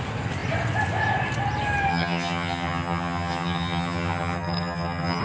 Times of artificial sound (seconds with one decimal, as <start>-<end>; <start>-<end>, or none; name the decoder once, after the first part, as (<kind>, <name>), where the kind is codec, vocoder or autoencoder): 1.9-5.2 (vocoder, HiFi-GAN)